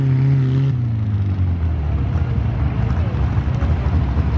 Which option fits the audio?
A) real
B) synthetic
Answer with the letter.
A